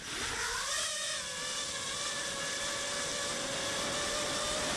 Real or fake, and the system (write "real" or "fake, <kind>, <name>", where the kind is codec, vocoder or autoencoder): real